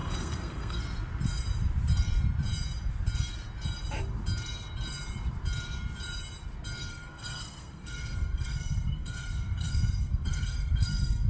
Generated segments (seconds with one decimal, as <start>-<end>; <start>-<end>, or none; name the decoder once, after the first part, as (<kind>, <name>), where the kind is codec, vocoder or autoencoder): 0.0-0.8 (codec, SNAC); 6.9-11.3